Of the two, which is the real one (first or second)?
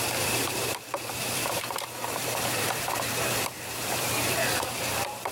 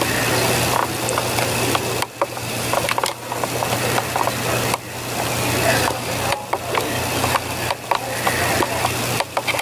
second